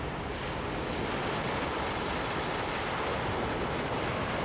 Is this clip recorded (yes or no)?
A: yes